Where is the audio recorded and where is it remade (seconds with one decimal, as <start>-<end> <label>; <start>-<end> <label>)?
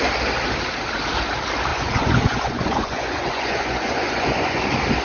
0.0-1.7 recorded; 1.7-4.6 remade; 4.6-5.0 recorded